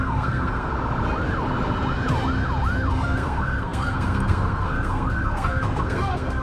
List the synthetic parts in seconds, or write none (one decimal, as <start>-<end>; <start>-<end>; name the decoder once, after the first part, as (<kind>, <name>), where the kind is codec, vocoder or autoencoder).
0.0-0.7 (codec, SNAC); 2.9-6.4